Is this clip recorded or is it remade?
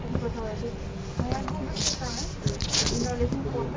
recorded